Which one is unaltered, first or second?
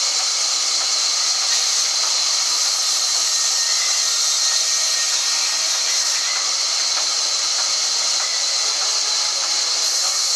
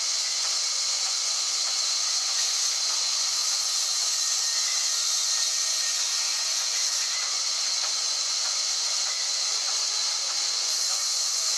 first